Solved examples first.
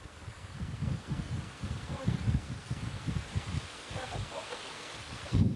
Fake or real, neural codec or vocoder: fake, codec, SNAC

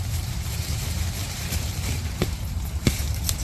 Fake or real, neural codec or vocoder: fake, vocoder, BigVGAN v2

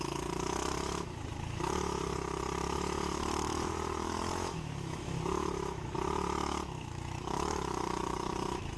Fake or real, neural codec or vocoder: fake, autoencoder, DAC-VAE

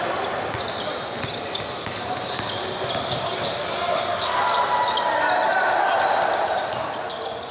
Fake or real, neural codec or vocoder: real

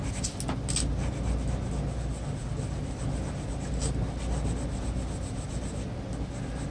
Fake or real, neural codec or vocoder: real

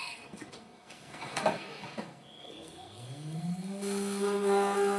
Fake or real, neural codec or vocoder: fake, codec, SNAC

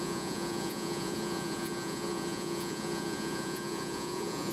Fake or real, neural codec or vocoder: fake, vocoder, Vocos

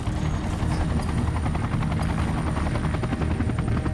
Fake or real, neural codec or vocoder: real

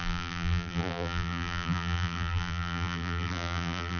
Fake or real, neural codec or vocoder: fake, vocoder, BigVGAN v2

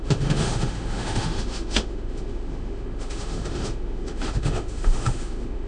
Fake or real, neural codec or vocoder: fake, autoencoder, DAC-VAE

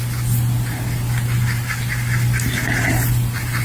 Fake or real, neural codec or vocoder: real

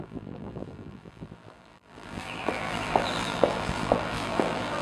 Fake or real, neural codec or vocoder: fake, vocoder, BigVGAN v2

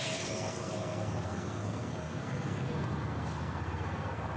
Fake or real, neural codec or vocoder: fake, codec, SNAC